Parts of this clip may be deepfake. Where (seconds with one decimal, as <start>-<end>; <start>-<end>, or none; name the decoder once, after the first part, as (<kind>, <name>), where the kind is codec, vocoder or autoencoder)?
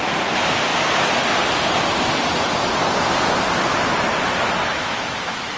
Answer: 4.6-5.6 (autoencoder, DAC-VAE)